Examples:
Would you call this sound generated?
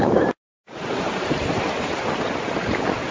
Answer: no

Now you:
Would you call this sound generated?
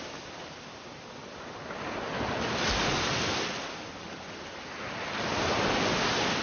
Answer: no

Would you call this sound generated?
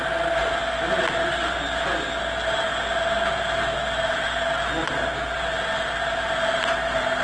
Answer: no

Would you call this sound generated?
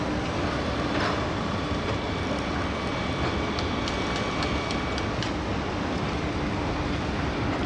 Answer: no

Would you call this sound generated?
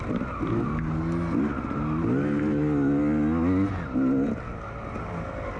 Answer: no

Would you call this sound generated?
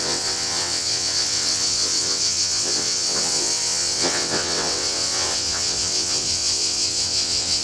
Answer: yes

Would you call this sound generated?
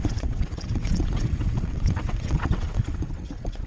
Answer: yes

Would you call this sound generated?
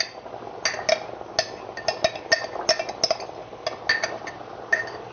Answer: no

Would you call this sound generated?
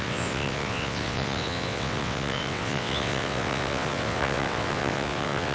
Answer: yes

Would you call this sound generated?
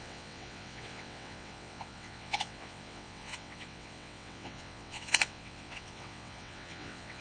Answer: yes